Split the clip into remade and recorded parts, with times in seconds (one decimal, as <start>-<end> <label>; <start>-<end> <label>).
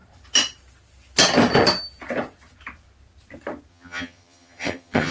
0.0-3.7 recorded; 3.7-5.1 remade